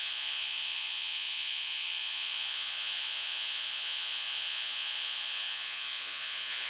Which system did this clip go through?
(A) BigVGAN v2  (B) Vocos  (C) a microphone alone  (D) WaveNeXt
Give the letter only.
B